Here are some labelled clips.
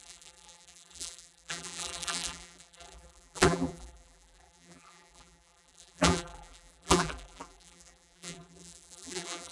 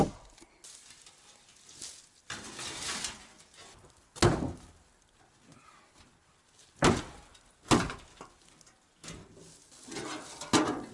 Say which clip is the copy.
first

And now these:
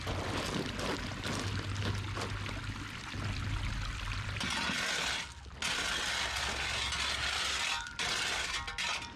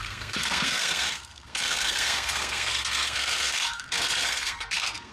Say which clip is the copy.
second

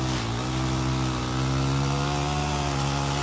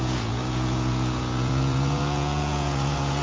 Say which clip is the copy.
second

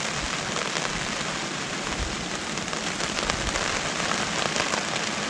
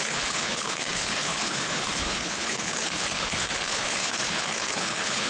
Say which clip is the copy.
second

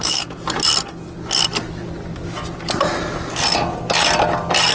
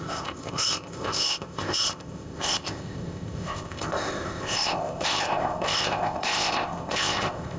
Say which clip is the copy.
second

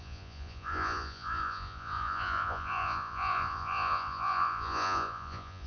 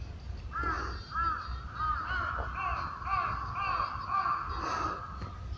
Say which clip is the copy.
first